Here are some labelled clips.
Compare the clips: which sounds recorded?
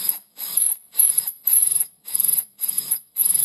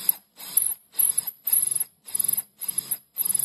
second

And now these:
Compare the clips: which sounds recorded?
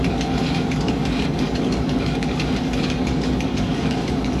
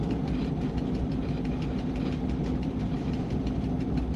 second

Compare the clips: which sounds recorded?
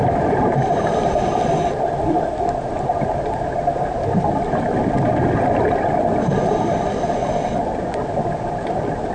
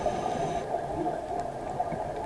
second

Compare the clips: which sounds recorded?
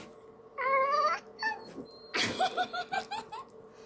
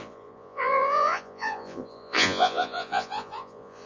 first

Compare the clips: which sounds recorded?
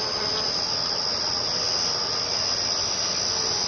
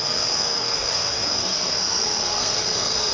first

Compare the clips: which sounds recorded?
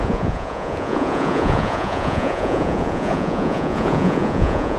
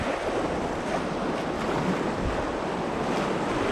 second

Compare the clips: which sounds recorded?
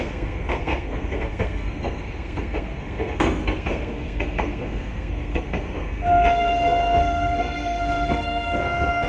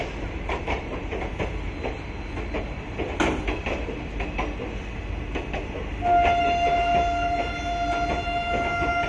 second